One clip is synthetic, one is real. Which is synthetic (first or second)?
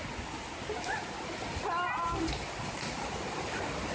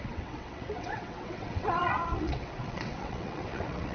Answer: second